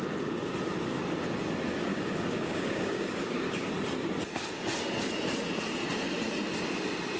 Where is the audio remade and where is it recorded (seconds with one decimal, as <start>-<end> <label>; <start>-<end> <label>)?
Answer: 0.0-1.9 recorded; 1.9-3.7 remade; 3.7-7.2 recorded